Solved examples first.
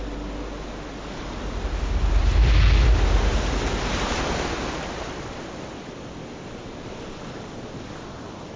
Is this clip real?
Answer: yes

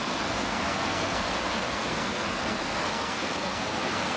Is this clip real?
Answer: no